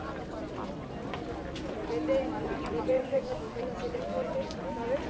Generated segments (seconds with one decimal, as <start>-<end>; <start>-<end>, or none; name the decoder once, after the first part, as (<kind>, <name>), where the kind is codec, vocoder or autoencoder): 3.0-3.6 (codec, DAC)